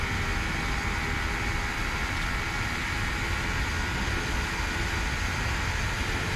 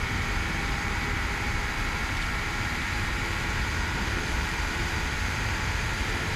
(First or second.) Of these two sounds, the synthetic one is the second